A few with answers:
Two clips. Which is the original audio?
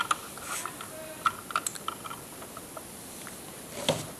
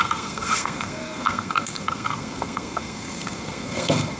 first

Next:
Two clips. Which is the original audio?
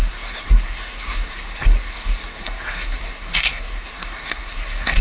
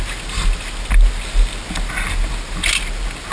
second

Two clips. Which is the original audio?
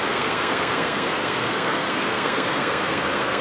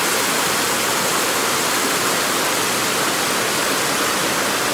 second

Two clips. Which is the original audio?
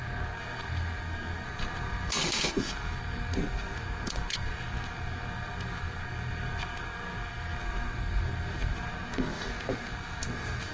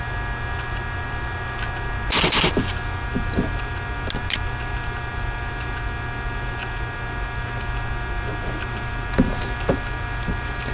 second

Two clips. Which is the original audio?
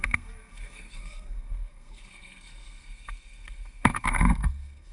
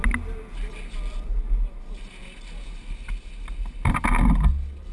second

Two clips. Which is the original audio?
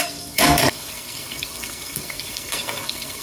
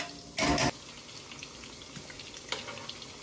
second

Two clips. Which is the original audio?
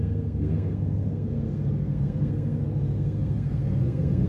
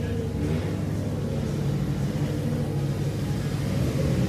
second